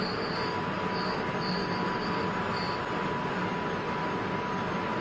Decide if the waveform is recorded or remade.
recorded